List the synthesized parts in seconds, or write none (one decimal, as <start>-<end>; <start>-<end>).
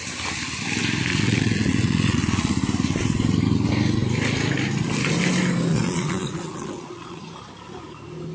1.1-2.5; 5.7-7.2